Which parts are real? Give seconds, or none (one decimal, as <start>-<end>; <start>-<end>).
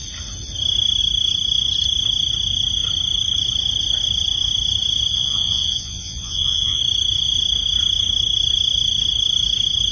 0.0-5.1; 6.8-9.9